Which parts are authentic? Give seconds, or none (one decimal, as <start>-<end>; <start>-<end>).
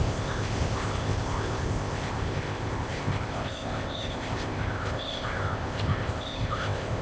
none